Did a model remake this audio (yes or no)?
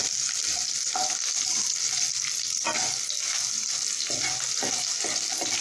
no